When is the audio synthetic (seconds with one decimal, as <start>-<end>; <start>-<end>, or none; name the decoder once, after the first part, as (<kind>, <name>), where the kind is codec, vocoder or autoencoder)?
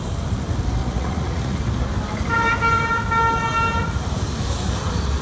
0.8-1.6 (vocoder, Vocos)